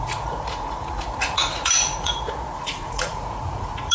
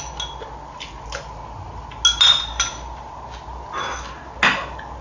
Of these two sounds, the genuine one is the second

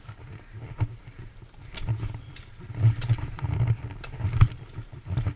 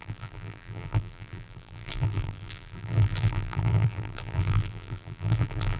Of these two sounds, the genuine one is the first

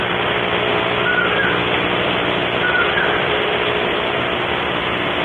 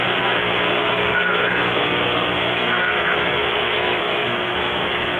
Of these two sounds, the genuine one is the first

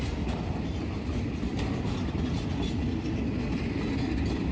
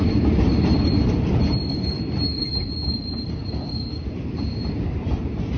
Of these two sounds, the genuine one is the first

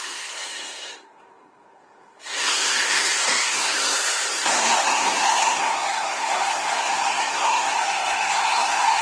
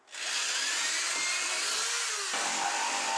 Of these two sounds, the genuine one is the second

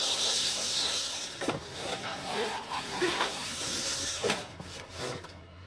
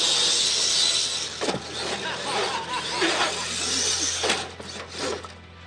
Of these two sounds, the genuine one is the second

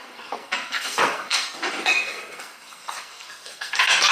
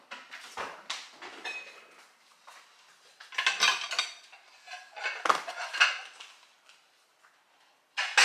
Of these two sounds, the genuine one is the second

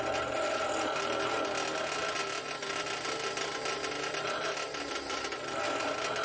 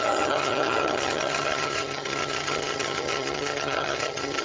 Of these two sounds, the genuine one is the first